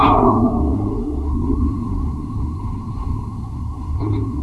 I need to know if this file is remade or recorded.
remade